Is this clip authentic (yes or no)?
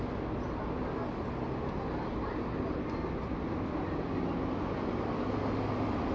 yes